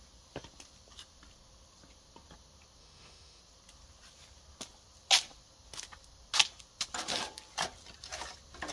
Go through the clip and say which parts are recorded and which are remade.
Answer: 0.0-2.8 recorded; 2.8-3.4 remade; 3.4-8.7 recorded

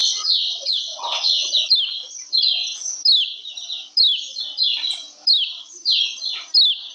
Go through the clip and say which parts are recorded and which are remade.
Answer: 0.0-1.5 remade; 1.5-6.9 recorded

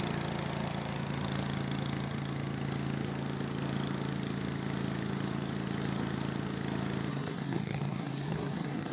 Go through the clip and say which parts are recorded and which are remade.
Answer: 0.0-7.1 recorded; 7.1-8.9 remade

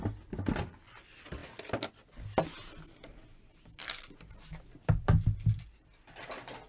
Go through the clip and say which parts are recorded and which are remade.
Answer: 0.0-6.7 recorded

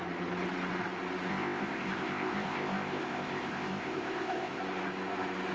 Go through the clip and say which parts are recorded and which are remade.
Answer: 0.0-1.3 recorded; 1.3-4.6 remade; 4.6-5.5 recorded

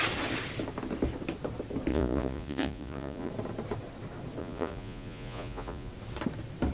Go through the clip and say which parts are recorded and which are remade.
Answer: 0.0-1.9 recorded; 1.9-3.3 remade; 3.3-4.4 recorded; 4.4-5.9 remade; 5.9-6.7 recorded